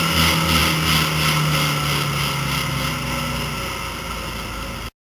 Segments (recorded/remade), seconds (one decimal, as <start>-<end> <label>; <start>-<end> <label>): 0.0-5.0 recorded